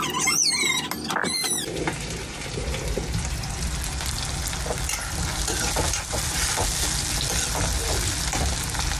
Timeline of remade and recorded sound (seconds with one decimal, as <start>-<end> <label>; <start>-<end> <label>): 0.0-9.0 recorded